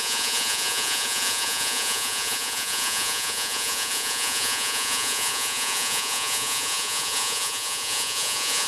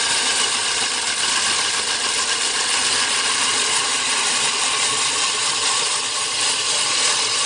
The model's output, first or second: first